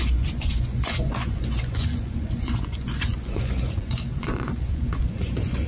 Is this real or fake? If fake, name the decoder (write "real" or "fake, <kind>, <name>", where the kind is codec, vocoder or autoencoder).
fake, vocoder, Vocos